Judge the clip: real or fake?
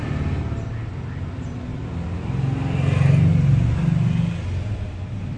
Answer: real